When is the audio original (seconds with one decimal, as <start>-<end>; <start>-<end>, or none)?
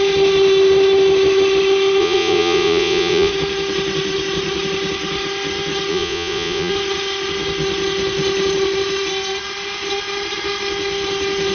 0.0-2.0; 3.3-5.9; 6.7-11.5